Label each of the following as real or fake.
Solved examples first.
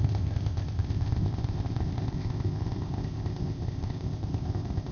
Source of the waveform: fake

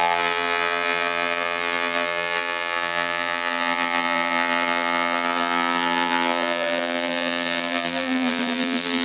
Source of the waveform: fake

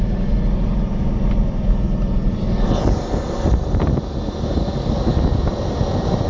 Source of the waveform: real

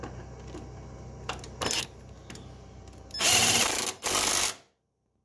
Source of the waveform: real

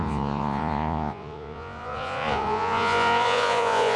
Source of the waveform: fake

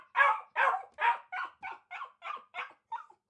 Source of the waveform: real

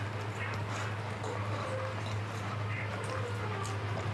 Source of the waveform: real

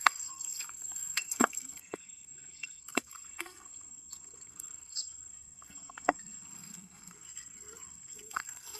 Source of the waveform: fake